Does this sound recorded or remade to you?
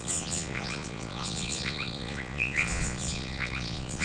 remade